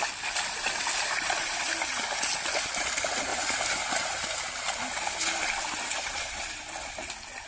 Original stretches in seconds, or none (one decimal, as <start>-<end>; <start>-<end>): 0.0-7.5